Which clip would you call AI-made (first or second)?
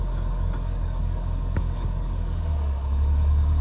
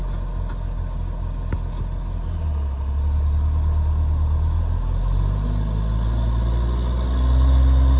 first